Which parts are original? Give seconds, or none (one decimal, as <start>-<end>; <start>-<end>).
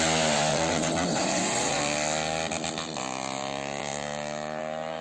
0.0-0.5; 1.8-5.0